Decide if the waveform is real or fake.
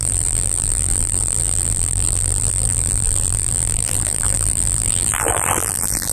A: fake